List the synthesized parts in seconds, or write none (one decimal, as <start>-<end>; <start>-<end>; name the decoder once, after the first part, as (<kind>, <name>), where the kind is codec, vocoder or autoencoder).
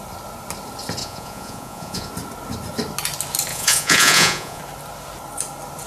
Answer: 1.0-2.1 (vocoder, Vocos); 3.5-4.6